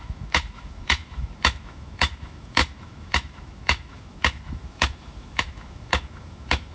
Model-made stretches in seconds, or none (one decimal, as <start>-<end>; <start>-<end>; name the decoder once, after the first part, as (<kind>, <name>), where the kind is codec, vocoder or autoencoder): 0.0-6.7 (autoencoder, DAC-VAE)